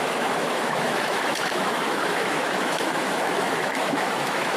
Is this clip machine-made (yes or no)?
yes